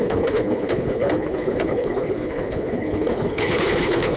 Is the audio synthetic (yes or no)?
yes